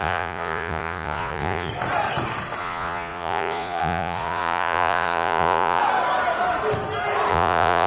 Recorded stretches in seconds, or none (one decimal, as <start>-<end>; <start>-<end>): 1.7-2.6; 5.8-7.3